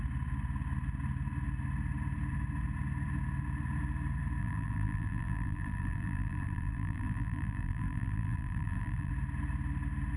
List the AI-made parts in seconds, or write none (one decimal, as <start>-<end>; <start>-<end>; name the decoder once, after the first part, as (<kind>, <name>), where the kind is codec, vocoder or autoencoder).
4.4-9.1 (vocoder, BigVGAN v2)